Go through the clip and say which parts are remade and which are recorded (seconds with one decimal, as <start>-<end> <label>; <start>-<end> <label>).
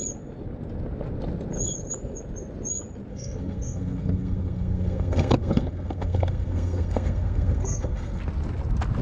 0.0-3.1 recorded; 3.1-8.2 remade; 8.2-9.0 recorded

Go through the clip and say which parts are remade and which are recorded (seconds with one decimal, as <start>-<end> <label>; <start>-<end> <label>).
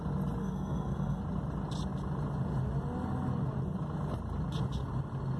0.0-0.4 recorded; 0.4-1.2 remade; 1.2-5.4 recorded